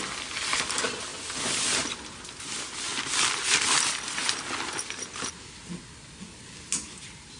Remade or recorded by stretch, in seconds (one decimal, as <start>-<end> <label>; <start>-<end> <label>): 0.0-7.4 recorded